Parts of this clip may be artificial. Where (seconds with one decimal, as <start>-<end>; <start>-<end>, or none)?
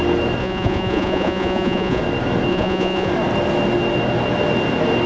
0.4-2.0; 2.5-3.1